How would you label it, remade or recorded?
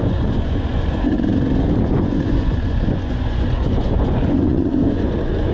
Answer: remade